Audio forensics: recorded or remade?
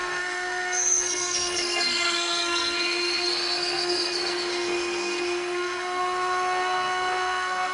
remade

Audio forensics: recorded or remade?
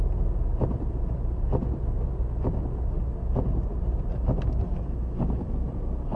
recorded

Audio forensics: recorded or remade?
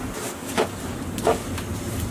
recorded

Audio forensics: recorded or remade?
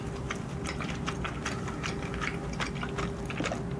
recorded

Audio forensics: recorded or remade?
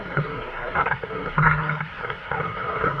remade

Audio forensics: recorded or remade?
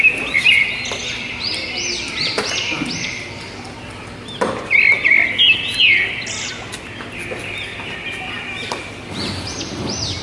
recorded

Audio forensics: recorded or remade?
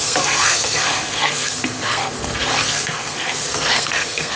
remade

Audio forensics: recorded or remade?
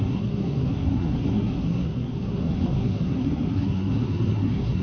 remade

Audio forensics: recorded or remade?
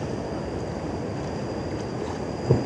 recorded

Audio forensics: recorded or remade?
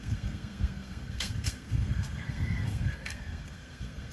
remade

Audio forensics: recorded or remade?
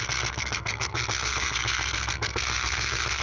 remade